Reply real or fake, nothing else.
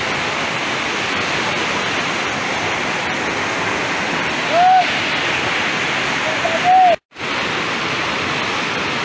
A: real